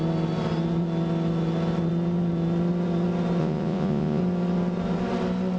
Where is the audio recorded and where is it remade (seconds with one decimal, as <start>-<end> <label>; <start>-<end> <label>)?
0.0-3.4 recorded; 3.4-4.2 remade; 4.2-5.6 recorded